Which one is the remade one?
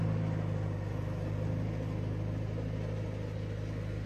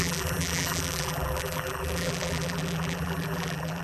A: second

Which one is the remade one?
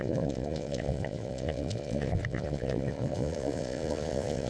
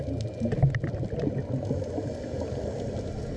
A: first